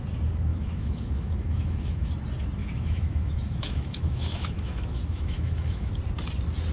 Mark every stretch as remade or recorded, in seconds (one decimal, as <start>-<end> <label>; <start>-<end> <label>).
0.0-0.5 recorded; 0.5-2.1 remade; 2.1-2.6 recorded; 2.6-5.9 remade; 5.9-6.7 recorded